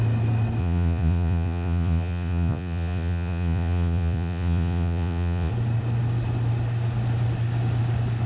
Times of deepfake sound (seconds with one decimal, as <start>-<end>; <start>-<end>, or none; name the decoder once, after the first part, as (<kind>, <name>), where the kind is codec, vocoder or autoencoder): 0.6-5.5 (vocoder, Vocos)

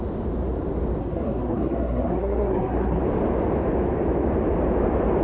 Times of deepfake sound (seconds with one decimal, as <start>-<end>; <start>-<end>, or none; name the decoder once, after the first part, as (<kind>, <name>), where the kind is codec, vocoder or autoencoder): 1.0-3.0 (codec, SNAC)